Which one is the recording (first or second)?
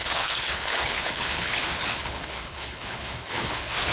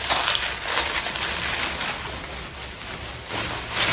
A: second